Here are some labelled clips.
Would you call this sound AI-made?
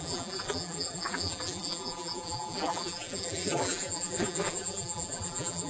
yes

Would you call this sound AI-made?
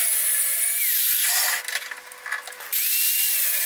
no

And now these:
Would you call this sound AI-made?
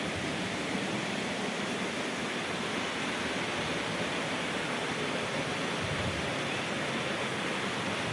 no